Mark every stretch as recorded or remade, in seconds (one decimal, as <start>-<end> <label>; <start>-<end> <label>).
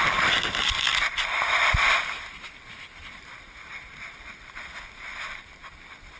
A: 0.0-6.2 recorded